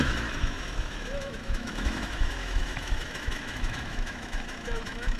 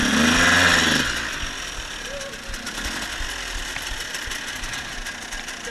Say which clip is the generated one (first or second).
first